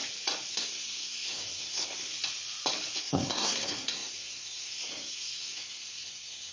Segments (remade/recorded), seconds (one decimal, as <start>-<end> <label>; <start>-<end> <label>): 0.0-0.5 recorded; 0.5-2.1 remade; 2.1-3.0 recorded; 3.0-6.5 remade